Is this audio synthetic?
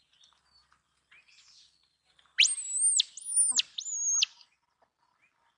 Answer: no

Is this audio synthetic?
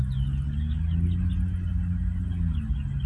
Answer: no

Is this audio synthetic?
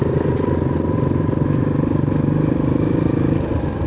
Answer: no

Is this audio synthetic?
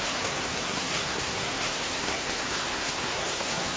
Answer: yes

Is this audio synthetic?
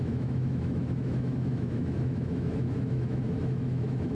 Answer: yes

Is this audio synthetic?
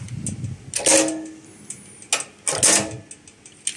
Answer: no